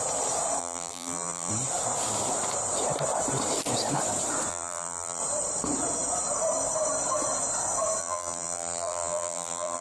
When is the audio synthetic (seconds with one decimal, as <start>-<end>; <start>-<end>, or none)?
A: 0.6-1.5; 4.5-5.2; 8.0-9.8